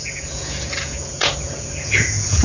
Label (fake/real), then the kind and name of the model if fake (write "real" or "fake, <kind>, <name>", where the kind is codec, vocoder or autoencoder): fake, vocoder, Vocos